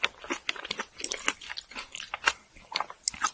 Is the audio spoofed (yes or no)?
no